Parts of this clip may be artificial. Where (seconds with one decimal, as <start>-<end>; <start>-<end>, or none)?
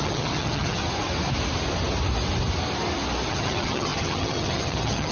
0.0-0.8; 3.3-5.1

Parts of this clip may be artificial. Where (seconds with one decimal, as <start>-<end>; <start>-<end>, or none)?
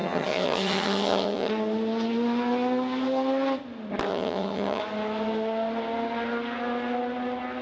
0.0-1.5; 4.1-4.8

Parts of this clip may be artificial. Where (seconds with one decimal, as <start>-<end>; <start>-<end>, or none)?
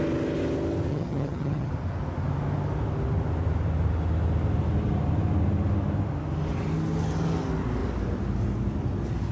0.9-1.7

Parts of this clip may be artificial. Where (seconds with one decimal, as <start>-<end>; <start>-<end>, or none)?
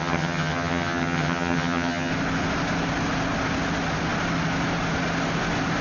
0.0-2.1